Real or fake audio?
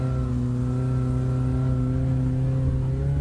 real